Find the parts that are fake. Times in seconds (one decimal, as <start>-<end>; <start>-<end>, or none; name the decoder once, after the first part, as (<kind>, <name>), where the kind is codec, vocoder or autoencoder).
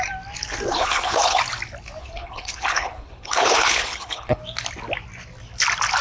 0.7-1.4 (codec, HILCodec); 2.0-4.4